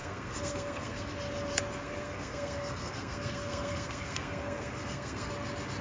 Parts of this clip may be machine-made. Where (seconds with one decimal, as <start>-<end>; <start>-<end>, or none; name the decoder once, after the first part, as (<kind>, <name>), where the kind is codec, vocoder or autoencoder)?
0.0-1.1 (codec, SNAC); 1.8-5.3